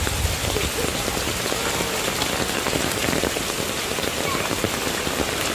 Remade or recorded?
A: recorded